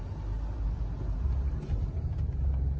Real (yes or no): yes